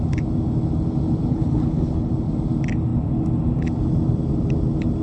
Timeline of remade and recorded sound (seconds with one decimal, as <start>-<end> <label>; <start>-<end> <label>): 0.0-1.3 recorded; 1.3-2.1 remade; 2.1-5.0 recorded